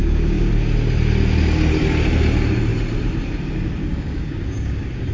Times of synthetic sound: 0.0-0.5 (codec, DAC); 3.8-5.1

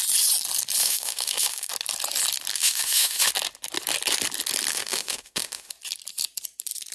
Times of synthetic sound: 0.8-1.7 (autoencoder, DAC-VAE); 2.5-3.3; 4.7-5.7

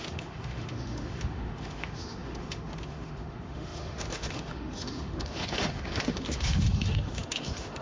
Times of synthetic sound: 0.0-7.8 (autoencoder, DAC-VAE)

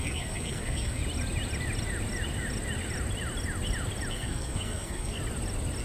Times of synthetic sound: 0.0-1.0 (codec, SNAC); 4.1-5.2

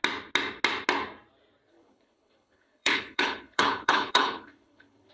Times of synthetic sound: 1.7-5.1 (codec, HILCodec)

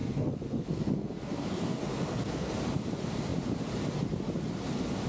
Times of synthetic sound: 0.0-2.5 (codec, SNAC)

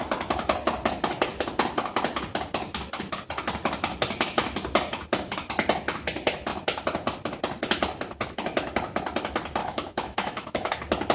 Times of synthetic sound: 9.6-10.7 (autoencoder, DAC-VAE)

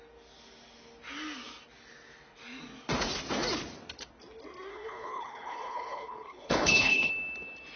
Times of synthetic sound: 4.7-7.1 (codec, HILCodec)